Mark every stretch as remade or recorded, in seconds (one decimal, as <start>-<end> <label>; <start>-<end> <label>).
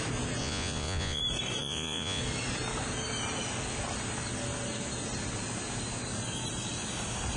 0.0-0.4 recorded; 0.4-1.2 remade; 1.2-1.6 recorded; 1.6-2.2 remade; 2.2-7.4 recorded